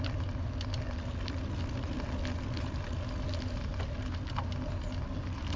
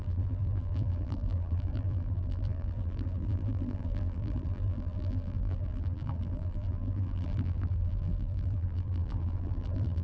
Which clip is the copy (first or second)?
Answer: second